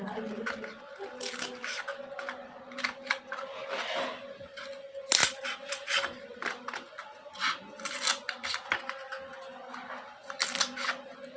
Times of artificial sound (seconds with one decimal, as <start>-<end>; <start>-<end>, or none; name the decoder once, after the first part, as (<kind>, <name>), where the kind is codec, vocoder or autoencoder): 5.2-6.7 (vocoder, BigVGAN v2)